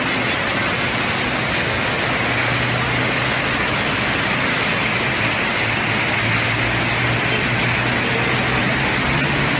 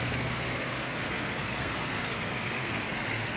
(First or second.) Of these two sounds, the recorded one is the first